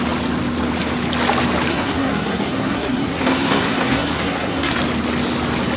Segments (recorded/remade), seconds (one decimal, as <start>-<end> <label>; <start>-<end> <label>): 0.0-1.7 recorded; 1.7-4.7 remade; 4.7-5.8 recorded